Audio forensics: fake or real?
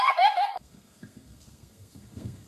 fake